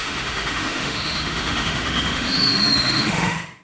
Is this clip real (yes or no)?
no